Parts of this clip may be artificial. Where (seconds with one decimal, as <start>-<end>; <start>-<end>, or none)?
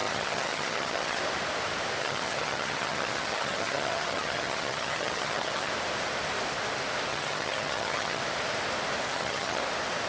0.0-1.2; 2.0-5.7; 7.1-8.2; 9.1-9.6